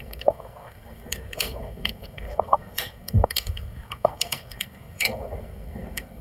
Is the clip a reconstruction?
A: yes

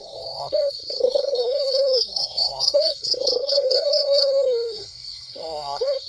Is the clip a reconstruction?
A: yes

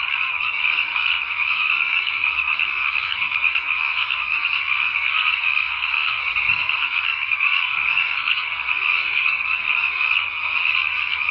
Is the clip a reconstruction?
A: yes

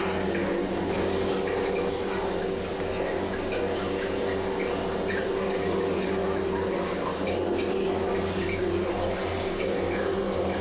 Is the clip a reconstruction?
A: no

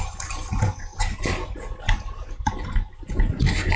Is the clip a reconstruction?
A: no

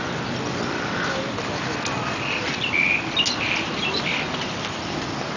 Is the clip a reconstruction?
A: no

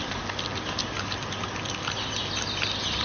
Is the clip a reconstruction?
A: no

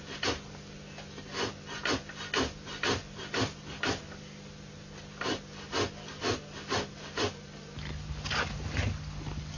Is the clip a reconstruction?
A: no